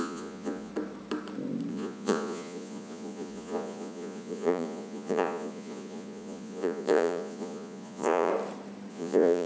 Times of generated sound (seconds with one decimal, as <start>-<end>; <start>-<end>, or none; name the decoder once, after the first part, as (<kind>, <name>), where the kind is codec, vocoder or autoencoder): 0.0-0.7 (vocoder, Vocos); 1.7-8.3; 8.9-9.5